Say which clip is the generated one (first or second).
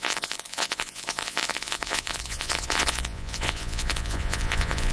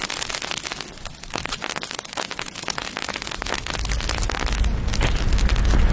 first